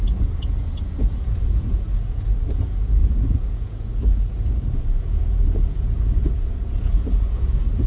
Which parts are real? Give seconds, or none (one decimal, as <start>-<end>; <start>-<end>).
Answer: none